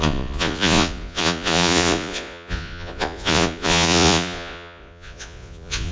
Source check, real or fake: fake